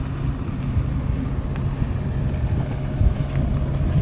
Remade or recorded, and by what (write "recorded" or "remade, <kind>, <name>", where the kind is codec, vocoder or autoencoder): recorded